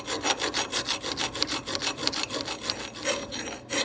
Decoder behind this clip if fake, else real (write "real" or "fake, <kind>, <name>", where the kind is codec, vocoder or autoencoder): real